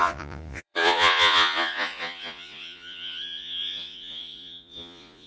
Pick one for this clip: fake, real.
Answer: fake